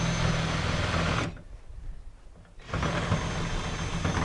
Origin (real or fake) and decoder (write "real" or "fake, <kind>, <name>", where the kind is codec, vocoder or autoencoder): real